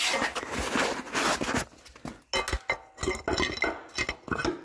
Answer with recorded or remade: recorded